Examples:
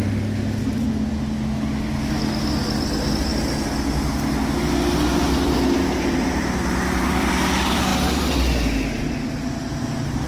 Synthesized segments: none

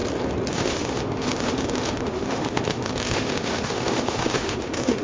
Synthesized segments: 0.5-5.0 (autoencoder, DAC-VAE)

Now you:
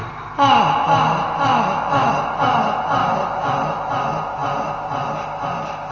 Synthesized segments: 1.5-2.1 (autoencoder, DAC-VAE); 3.0-3.9

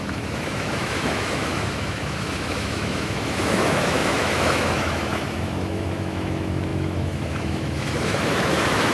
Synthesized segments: 0.0-8.9 (autoencoder, DAC-VAE)